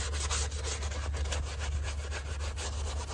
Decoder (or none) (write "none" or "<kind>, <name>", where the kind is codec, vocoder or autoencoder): none